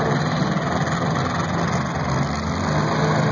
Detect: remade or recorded recorded